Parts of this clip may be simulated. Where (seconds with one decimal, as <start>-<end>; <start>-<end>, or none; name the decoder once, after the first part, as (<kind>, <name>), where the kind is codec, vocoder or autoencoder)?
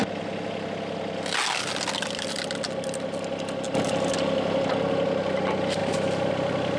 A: none